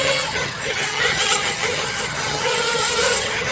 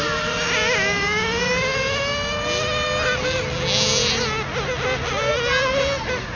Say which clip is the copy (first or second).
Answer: first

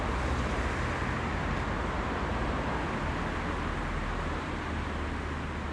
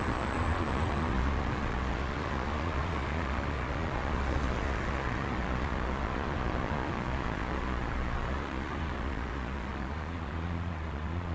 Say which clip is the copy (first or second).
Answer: second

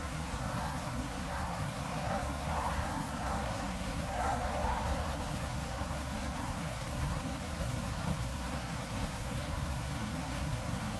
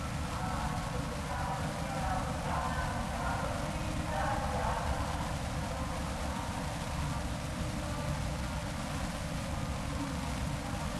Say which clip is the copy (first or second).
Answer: first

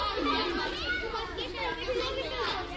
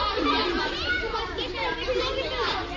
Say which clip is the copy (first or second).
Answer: second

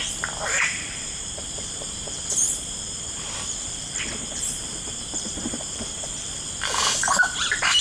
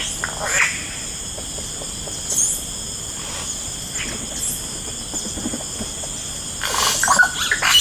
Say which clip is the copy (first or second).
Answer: first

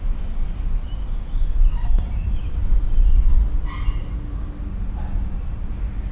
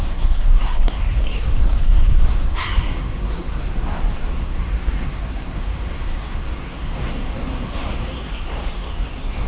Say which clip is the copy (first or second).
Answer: second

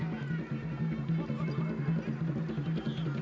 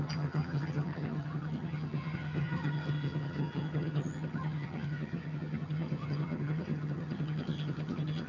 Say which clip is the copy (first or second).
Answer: second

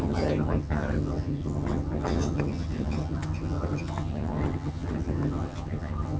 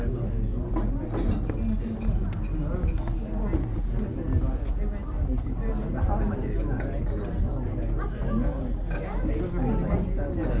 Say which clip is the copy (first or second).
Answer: first